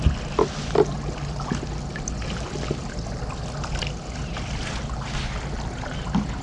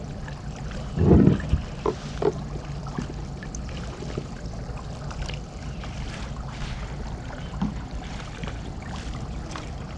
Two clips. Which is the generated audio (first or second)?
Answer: second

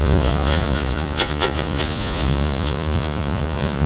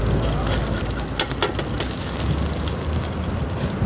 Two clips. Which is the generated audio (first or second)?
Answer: first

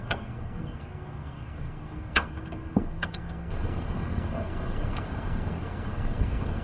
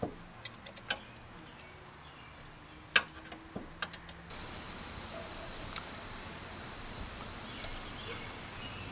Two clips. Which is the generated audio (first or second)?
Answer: first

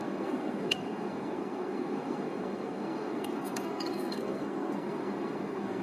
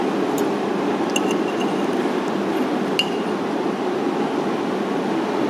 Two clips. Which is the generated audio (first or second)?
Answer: first